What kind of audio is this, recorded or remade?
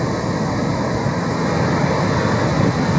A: recorded